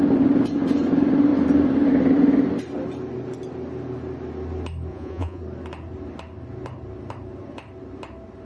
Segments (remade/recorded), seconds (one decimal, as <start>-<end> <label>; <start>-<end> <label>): 0.0-4.9 recorded; 4.9-5.4 remade; 5.4-8.4 recorded